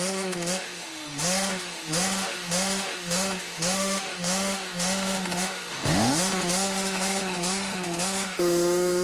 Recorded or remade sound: remade